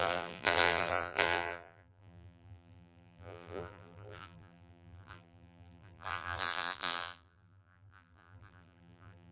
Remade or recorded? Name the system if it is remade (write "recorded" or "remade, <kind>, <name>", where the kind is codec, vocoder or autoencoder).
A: remade, vocoder, BigVGAN v2